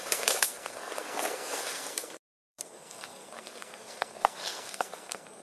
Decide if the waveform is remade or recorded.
remade